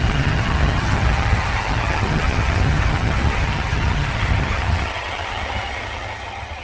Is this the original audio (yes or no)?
no